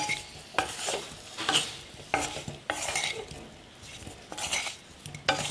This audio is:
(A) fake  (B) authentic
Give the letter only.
B